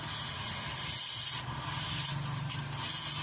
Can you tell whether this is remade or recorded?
recorded